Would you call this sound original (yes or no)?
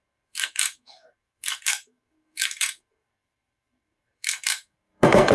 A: no